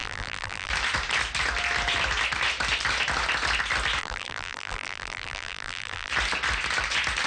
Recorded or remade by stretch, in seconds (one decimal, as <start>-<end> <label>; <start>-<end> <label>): 0.0-0.7 remade; 0.7-4.0 recorded; 4.0-6.1 remade; 6.1-7.3 recorded